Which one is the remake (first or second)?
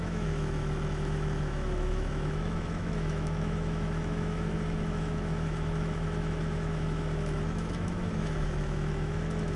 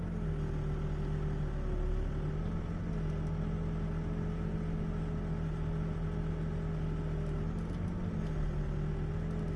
first